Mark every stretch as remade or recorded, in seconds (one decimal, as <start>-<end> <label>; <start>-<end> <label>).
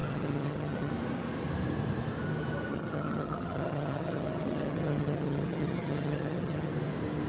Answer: 0.0-0.9 remade; 0.9-2.7 recorded; 2.7-6.7 remade; 6.7-7.3 recorded